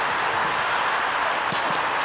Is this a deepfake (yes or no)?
no